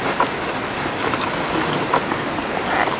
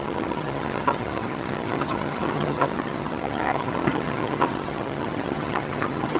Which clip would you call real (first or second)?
first